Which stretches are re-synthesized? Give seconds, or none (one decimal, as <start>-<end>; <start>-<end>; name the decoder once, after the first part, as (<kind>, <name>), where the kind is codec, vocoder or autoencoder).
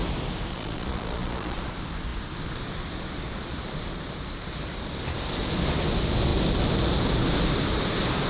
0.5-1.6 (vocoder, Vocos)